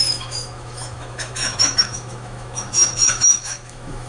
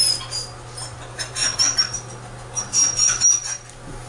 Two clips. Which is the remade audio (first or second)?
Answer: first